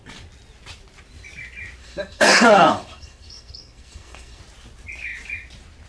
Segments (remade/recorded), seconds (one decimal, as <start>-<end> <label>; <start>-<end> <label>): 0.0-1.8 recorded; 1.8-4.4 remade; 4.4-5.9 recorded